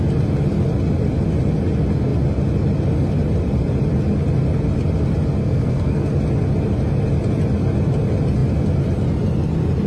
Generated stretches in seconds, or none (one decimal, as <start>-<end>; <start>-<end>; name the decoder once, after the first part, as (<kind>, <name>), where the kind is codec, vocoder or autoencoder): 5.4-6.1 (codec, SNAC)